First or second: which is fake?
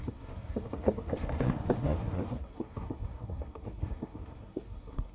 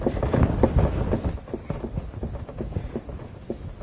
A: first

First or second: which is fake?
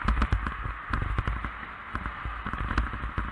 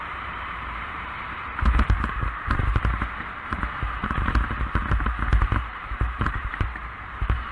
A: second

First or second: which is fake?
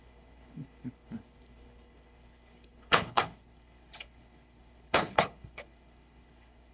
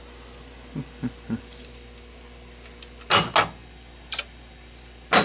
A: first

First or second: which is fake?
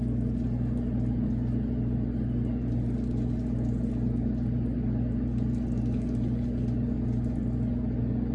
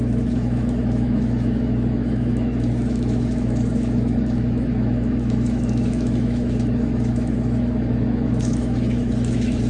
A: second